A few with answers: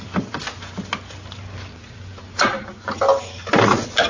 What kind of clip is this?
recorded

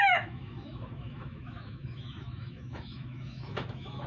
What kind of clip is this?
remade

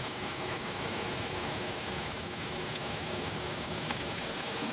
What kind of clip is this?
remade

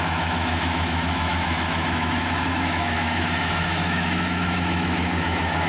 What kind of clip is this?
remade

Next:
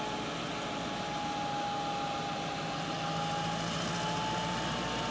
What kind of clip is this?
recorded